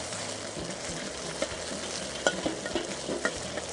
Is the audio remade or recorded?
recorded